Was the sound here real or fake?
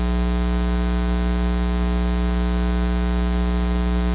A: real